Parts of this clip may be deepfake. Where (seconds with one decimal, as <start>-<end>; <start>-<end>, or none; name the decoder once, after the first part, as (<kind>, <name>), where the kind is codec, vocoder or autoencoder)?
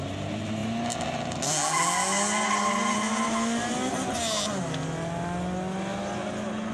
none